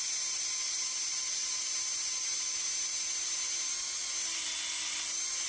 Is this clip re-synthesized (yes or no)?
no